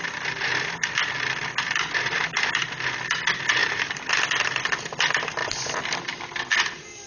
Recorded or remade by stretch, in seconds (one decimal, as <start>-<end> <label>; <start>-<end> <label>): 0.0-3.6 recorded; 3.6-4.1 remade; 4.1-7.1 recorded